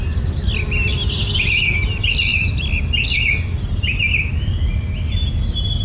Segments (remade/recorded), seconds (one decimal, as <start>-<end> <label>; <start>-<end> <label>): 0.0-5.8 recorded